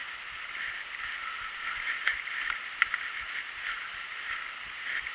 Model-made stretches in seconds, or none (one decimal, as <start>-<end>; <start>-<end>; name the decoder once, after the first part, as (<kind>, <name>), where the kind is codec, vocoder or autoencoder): none